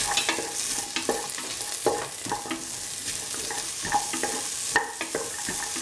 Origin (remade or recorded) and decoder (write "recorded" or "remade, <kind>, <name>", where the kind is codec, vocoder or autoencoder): recorded